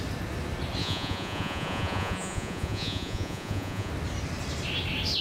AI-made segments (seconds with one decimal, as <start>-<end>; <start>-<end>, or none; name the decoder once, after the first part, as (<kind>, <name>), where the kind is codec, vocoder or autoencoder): 0.8-3.9 (vocoder, Vocos)